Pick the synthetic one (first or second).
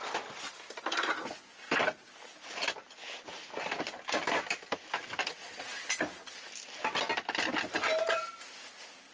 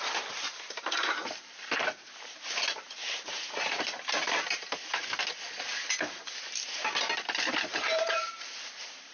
second